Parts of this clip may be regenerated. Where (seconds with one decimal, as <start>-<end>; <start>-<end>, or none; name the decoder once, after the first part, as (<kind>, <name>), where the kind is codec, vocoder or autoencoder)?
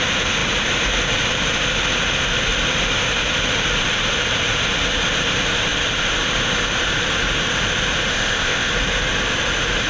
8.1-8.7 (codec, ZipCodec)